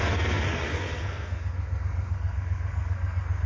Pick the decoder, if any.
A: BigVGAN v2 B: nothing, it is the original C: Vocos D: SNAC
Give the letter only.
D